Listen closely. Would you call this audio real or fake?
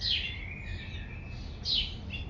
real